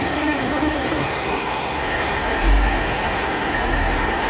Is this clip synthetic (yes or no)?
yes